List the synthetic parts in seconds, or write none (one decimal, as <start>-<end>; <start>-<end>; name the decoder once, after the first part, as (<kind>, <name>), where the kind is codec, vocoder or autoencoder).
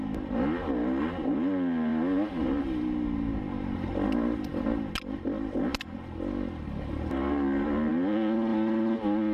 none